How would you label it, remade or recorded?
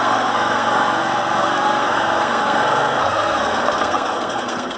remade